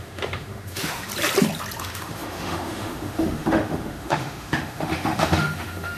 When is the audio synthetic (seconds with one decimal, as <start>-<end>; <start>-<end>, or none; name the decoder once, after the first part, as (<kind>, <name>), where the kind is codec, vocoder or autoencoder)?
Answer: 0.0-1.1 (autoencoder, DAC-VAE); 1.8-6.0